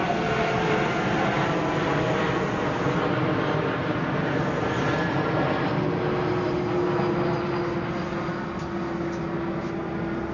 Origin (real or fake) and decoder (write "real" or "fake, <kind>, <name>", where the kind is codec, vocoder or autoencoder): real